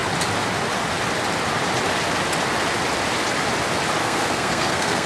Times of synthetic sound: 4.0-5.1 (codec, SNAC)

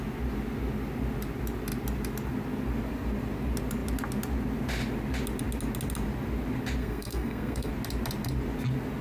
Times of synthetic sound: 6.8-7.7 (codec, SNAC)

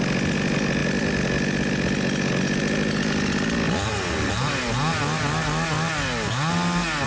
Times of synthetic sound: none

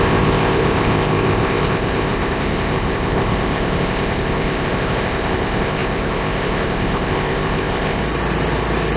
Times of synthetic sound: 0.0-8.0 (codec, ZipCodec)